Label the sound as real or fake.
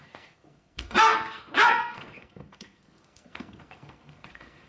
fake